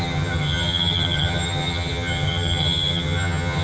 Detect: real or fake fake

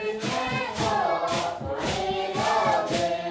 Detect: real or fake real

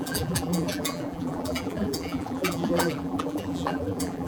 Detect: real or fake fake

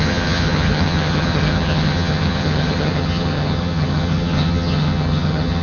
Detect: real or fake fake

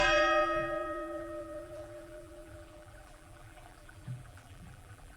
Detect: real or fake fake